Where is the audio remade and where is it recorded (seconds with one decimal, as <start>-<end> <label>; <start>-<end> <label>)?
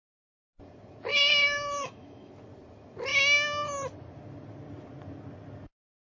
0.0-1.1 recorded; 1.1-2.3 remade; 2.3-6.2 recorded